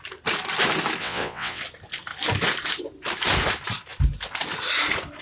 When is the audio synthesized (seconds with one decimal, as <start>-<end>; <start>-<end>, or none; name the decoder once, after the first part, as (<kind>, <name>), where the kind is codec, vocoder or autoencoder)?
1.0-1.6 (vocoder, WaveNeXt)